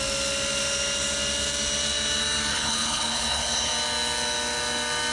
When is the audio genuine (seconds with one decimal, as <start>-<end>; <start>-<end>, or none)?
0.0-2.5; 3.7-5.1

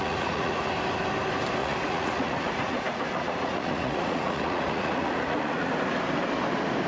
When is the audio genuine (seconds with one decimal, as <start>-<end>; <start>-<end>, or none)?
0.7-1.6; 5.7-6.9

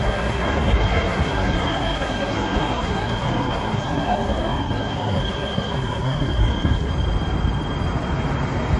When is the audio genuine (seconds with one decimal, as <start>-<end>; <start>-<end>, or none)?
6.9-8.8